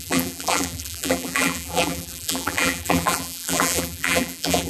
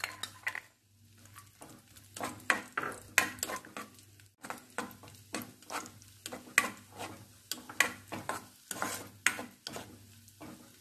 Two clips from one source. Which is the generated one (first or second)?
first